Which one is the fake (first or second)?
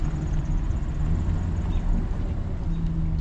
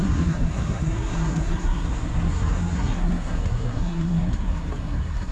second